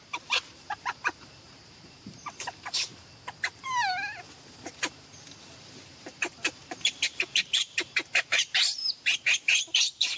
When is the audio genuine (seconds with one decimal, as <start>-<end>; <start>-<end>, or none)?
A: 2.9-5.6